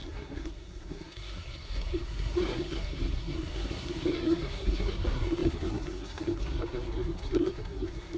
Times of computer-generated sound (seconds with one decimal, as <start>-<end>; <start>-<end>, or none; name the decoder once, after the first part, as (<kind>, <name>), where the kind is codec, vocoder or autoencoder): 0.0-8.2 (codec, SNAC)